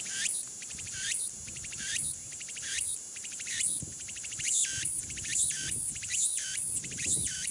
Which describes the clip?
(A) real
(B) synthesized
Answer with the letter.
B